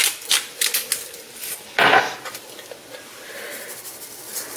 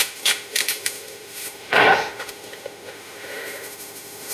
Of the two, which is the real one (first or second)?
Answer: first